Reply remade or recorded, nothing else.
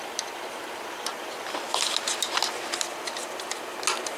recorded